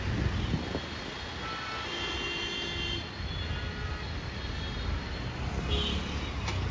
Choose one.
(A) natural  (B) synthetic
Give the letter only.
A